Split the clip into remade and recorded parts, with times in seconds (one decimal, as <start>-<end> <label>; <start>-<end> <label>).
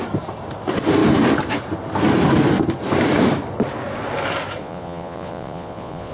0.0-4.6 recorded; 4.6-6.1 remade